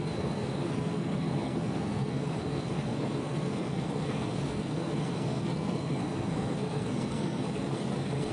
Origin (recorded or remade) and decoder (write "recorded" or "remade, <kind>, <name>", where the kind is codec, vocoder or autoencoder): remade, codec, SNAC